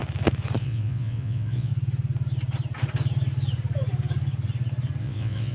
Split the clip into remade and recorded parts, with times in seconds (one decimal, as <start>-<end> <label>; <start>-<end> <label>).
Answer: 0.0-0.6 recorded; 0.6-1.7 remade; 1.7-5.0 recorded; 5.0-5.5 remade